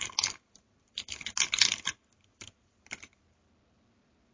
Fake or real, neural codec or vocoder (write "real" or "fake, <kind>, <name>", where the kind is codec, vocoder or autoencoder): real